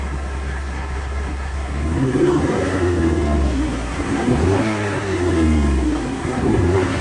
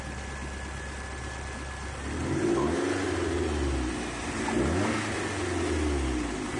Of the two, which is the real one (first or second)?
second